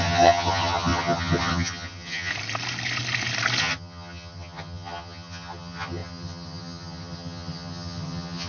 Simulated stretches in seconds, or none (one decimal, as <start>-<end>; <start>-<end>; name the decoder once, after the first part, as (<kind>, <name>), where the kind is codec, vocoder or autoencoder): 0.0-2.3 (vocoder, HiFi-GAN); 3.6-8.5